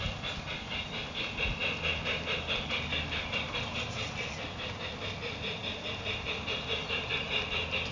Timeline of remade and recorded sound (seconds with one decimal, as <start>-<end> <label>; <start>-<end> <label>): 0.0-7.9 recorded